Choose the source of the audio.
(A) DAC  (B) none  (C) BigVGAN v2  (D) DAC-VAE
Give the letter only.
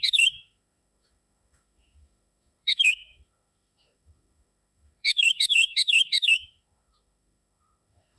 D